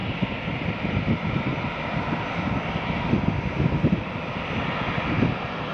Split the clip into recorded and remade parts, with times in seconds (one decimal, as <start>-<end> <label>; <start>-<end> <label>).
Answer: 0.0-2.6 remade; 2.6-5.7 recorded